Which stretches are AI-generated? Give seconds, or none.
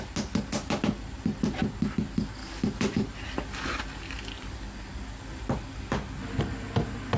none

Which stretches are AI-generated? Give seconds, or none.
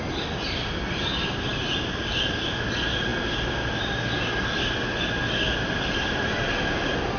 none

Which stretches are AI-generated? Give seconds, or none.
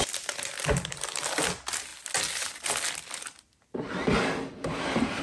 none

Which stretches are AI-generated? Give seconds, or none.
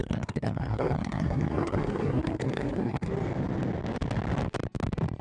0.0-3.1 (codec, SNAC)